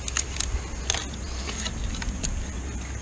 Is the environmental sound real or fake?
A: real